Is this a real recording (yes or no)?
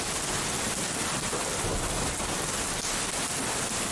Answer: yes